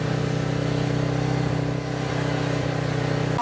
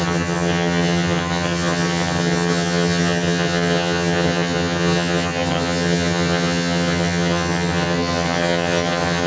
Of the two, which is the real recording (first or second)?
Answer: first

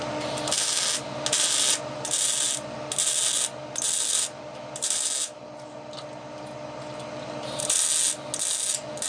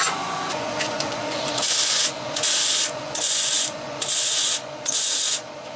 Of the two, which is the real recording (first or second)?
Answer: first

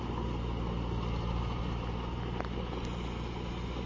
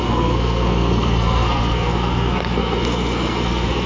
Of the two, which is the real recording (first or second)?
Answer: first